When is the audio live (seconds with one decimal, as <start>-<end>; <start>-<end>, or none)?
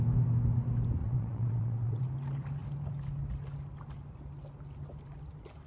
0.0-1.0; 2.0-5.7